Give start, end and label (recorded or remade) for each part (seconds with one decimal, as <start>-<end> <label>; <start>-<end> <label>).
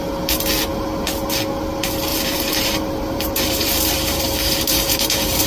0.0-2.1 recorded; 2.1-5.5 remade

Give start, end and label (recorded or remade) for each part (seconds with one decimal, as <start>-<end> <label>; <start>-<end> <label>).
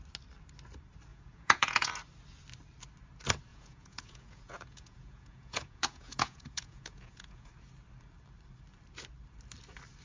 0.0-1.1 recorded; 1.1-1.9 remade; 1.9-3.5 recorded; 3.5-7.5 remade; 7.5-10.0 recorded